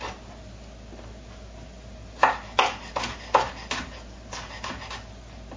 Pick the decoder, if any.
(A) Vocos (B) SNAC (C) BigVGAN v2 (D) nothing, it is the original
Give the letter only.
D